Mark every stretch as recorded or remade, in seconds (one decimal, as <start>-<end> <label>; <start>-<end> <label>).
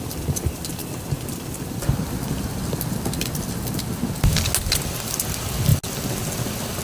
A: 0.0-6.8 recorded